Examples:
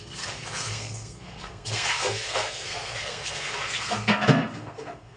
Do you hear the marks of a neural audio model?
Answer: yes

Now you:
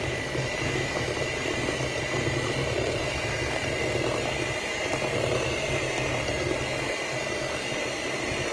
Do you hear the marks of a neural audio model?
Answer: no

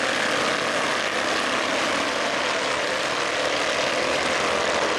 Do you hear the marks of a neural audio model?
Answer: no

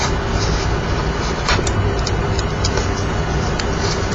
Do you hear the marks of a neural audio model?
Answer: no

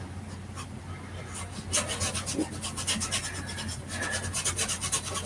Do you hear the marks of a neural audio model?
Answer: no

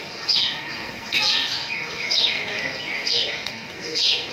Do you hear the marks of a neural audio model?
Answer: yes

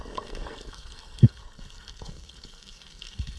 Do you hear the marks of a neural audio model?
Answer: yes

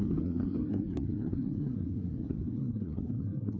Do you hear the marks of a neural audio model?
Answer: yes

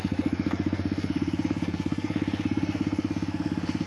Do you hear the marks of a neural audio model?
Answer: yes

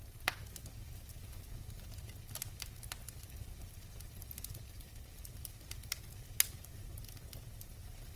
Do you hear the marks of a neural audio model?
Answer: no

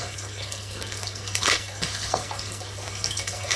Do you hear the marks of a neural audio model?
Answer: yes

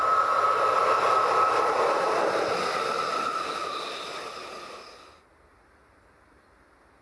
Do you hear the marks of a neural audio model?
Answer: no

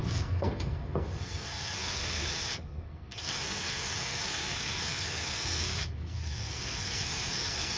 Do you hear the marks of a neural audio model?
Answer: yes